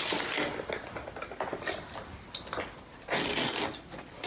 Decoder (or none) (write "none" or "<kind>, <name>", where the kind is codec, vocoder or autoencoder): none